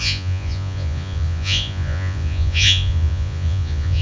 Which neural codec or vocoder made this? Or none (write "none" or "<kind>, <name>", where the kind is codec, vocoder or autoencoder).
vocoder, Vocos